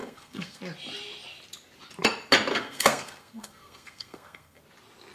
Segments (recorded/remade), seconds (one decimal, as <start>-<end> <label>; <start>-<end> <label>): 0.0-0.6 remade; 0.6-2.5 recorded; 2.5-4.6 remade; 4.6-5.1 recorded